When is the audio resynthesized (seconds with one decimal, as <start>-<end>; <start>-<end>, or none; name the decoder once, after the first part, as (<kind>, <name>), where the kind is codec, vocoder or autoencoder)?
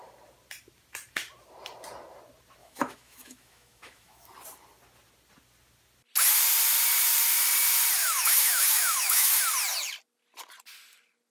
2.6-4.3 (autoencoder, DAC-VAE); 8.0-9.4